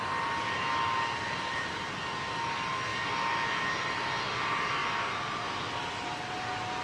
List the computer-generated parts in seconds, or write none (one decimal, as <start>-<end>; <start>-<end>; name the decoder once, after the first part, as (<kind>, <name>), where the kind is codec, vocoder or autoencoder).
none